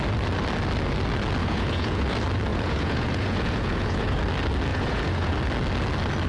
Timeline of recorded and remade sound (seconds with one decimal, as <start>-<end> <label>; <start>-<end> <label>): 0.0-1.4 recorded; 1.4-2.0 remade; 2.0-2.5 recorded; 2.5-4.2 remade; 4.2-4.7 recorded; 4.7-5.3 remade; 5.3-6.3 recorded